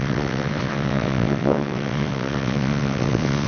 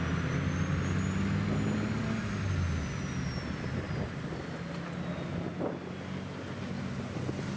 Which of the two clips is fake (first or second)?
first